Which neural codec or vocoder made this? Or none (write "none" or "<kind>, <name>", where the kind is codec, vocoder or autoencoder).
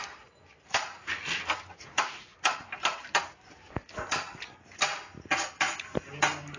none